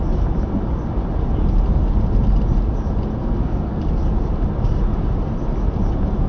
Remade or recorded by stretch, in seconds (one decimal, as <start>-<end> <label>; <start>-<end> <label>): 0.0-3.2 recorded; 3.2-3.8 remade; 3.8-6.3 recorded